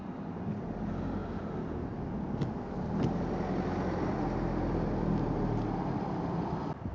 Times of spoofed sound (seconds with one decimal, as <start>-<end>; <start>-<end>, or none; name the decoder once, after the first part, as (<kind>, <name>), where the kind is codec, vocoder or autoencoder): none